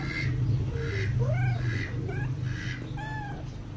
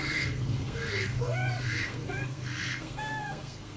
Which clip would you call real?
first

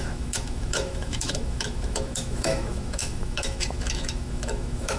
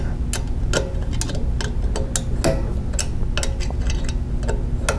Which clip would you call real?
second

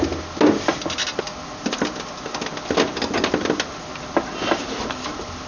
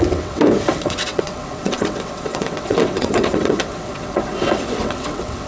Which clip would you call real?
first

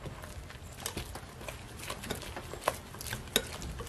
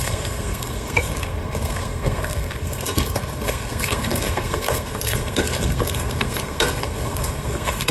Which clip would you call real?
first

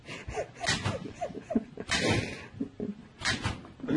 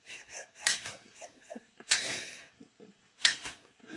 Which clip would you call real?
first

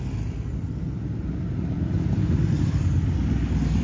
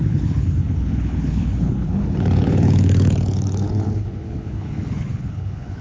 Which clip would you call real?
first